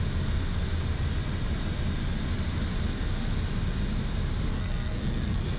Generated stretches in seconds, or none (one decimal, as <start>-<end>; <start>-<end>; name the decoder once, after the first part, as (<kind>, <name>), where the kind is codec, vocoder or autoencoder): 4.5-5.6 (codec, SNAC)